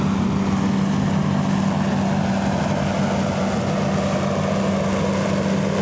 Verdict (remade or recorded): recorded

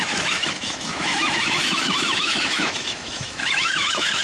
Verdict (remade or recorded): remade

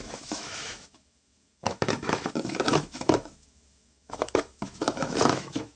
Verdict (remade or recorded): remade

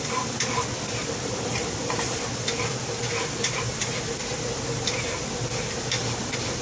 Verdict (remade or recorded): recorded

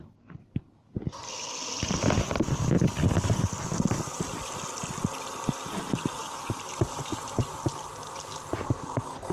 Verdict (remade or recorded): recorded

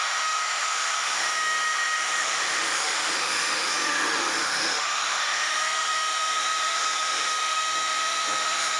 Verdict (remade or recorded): remade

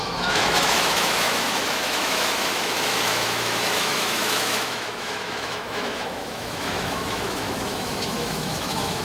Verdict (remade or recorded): remade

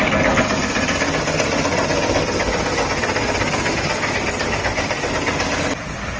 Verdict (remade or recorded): recorded